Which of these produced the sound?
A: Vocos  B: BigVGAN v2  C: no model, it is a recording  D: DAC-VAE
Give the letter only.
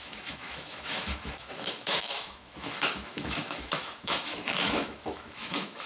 D